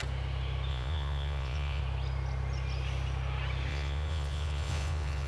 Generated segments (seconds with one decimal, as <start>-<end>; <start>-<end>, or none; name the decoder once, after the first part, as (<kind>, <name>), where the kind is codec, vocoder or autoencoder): 0.7-1.8 (vocoder, Vocos); 3.7-5.3